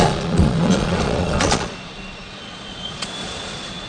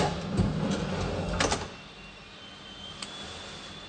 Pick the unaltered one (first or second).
second